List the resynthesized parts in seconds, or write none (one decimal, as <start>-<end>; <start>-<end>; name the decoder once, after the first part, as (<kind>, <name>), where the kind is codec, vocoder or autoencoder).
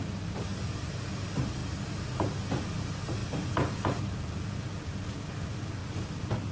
3.2-4.4 (vocoder, BigVGAN v2)